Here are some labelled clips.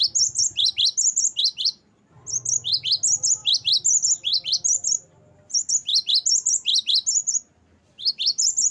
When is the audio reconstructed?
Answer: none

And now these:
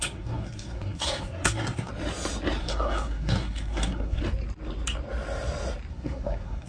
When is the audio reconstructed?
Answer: 0.0-1.9 (codec, SNAC); 2.6-4.2; 5.9-6.7

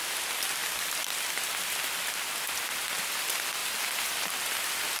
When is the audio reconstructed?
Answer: none

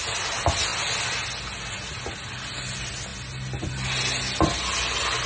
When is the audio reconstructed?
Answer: none

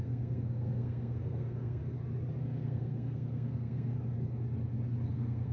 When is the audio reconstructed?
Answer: 0.0-1.8 (codec, SNAC); 2.4-3.9; 5.1-5.5